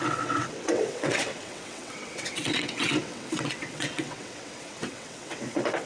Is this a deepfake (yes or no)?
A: yes